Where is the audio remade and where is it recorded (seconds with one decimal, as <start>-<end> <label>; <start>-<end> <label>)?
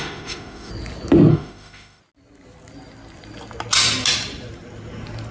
0.0-0.7 remade; 0.7-1.3 recorded; 1.3-2.0 remade; 2.0-5.3 recorded